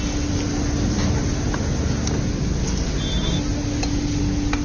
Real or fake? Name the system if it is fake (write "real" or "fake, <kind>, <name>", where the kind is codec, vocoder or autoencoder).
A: real